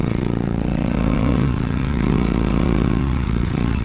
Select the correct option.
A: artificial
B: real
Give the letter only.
A